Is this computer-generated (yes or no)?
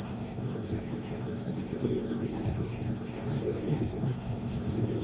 yes